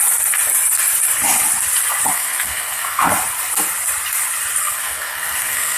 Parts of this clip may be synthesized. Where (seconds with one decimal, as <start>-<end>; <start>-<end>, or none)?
2.1-3.1; 4.6-5.8